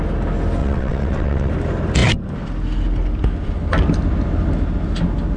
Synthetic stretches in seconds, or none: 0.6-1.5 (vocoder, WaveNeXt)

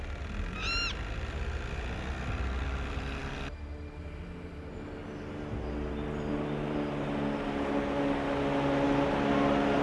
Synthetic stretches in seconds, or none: none

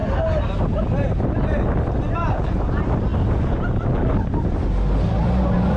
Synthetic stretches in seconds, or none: none

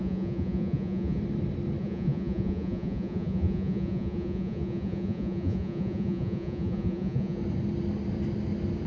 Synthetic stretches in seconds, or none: 0.0-1.2 (vocoder, Vocos); 1.8-7.4

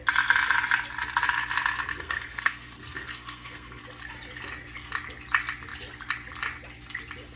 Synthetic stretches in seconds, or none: 1.9-3.8 (codec, SNAC)

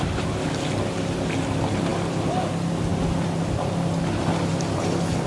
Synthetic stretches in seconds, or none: none

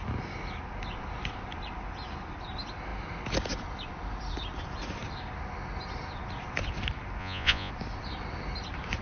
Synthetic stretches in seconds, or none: 7.2-7.7 (vocoder, Vocos)